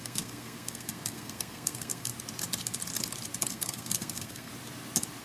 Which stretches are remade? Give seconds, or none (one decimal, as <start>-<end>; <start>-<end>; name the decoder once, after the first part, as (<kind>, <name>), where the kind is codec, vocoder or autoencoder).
0.0-2.1 (codec, SNAC); 3.5-4.5